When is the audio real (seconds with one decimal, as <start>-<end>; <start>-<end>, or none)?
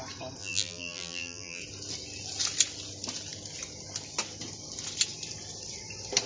0.0-0.4; 1.6-6.3